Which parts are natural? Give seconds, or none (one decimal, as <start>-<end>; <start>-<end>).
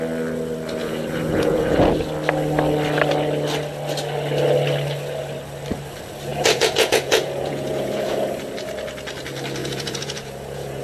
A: 0.0-0.8; 1.9-6.3; 8.4-9.6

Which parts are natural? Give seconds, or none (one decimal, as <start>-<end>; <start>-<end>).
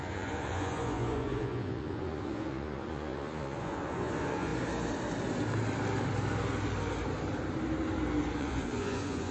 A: 4.5-8.4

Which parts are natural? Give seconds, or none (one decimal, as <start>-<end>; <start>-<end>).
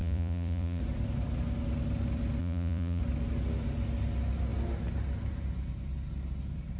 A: 0.8-2.4; 3.0-6.8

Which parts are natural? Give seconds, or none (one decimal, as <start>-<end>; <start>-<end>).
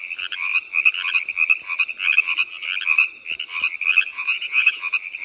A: 0.0-4.1; 4.8-5.2